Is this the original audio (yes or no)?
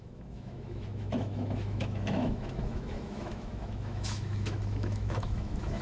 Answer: no